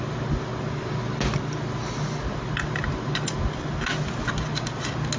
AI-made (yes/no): no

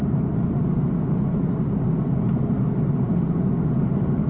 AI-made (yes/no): no